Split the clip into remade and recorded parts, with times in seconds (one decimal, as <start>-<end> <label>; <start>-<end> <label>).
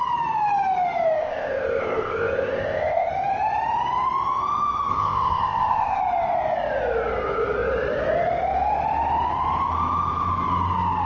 0.0-1.2 recorded; 1.2-3.1 remade; 3.1-4.9 recorded; 4.9-6.0 remade; 6.0-11.1 recorded